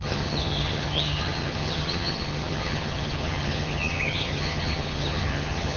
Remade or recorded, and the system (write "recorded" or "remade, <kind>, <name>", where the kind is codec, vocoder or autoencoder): remade, vocoder, HiFi-GAN